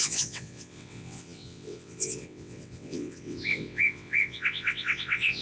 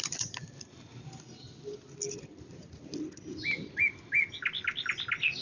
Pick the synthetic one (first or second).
first